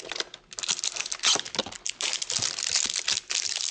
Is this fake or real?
real